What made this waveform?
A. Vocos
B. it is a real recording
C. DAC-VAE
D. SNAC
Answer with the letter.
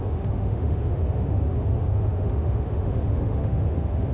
C